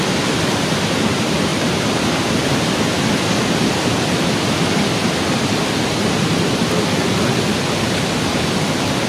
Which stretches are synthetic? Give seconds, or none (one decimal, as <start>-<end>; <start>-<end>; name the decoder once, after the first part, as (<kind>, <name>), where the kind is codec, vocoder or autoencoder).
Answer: none